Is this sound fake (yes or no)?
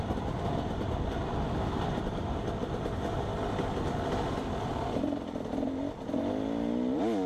no